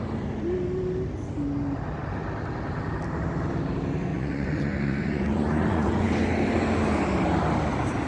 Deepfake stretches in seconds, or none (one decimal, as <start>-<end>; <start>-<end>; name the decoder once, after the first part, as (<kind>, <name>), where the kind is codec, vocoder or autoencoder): 4.1-6.1 (vocoder, Vocos)